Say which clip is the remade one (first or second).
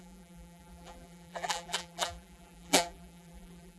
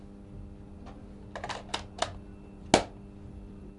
first